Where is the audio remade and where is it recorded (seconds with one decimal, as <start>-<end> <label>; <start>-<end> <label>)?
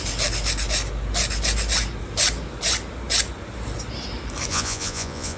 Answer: 0.0-4.5 recorded; 4.5-5.4 remade